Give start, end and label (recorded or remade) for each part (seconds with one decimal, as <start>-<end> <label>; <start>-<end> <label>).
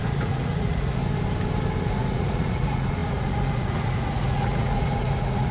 0.0-1.0 remade; 1.0-1.8 recorded; 1.8-5.5 remade